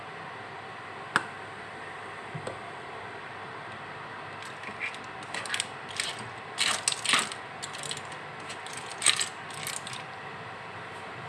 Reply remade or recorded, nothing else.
recorded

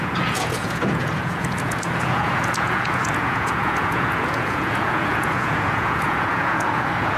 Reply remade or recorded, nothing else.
remade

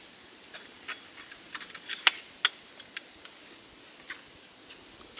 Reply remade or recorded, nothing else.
recorded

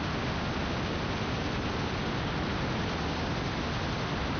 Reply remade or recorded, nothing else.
recorded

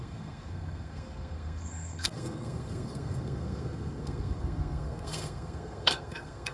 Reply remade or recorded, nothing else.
remade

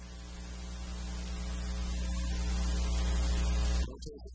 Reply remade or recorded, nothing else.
recorded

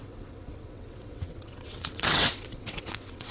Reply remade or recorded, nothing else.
remade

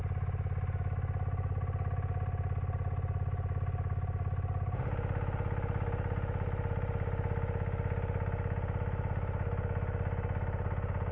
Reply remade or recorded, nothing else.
recorded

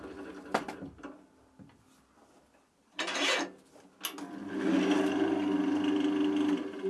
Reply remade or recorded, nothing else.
recorded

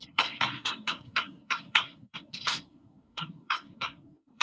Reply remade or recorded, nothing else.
remade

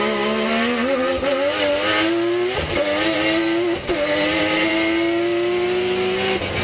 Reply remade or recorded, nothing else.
recorded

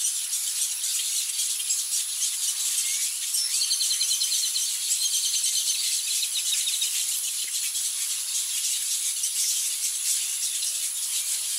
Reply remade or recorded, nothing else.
recorded